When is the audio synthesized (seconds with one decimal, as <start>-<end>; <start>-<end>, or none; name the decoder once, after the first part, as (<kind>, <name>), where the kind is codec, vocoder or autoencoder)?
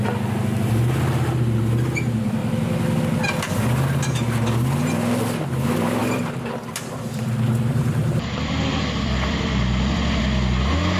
2.4-3.0 (vocoder, BigVGAN v2); 6.0-10.2